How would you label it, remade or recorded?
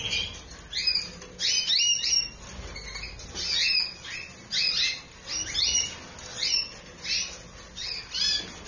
recorded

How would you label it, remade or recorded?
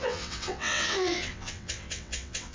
remade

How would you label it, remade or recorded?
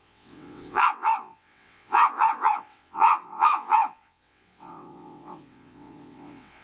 remade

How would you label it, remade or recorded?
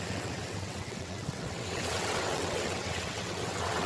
remade